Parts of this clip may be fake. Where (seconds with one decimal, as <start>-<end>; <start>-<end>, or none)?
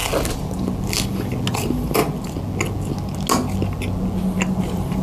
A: 1.5-2.0; 4.6-5.0